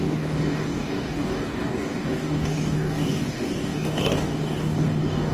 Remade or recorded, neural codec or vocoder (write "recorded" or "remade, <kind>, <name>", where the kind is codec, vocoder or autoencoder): remade, codec, DAC